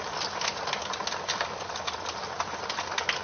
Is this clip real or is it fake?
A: real